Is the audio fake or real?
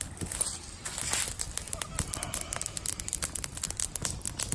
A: real